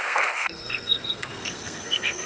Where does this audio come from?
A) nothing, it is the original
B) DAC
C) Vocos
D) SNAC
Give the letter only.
D